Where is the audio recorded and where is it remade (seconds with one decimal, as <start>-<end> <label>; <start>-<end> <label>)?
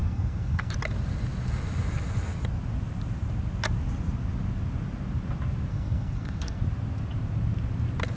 0.0-0.7 remade; 0.7-5.7 recorded; 5.7-6.6 remade; 6.6-8.2 recorded